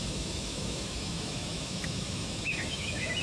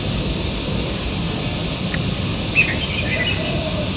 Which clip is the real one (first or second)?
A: second